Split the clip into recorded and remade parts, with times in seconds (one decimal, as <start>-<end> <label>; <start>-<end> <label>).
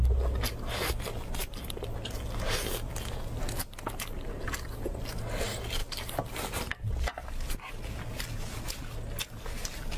0.0-10.0 recorded